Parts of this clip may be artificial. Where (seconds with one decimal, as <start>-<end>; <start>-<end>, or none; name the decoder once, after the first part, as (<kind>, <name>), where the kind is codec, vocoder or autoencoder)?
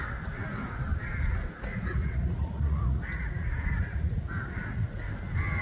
1.7-5.1 (vocoder, Vocos)